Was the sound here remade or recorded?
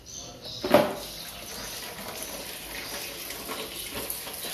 recorded